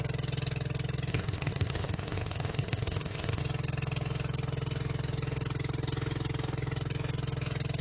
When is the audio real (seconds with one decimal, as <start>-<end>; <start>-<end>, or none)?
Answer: 0.0-1.1; 3.4-7.8